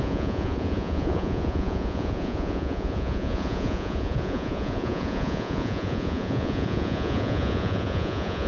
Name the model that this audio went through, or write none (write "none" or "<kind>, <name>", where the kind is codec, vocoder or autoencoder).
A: vocoder, Vocos